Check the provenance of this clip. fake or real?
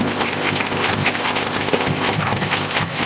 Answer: fake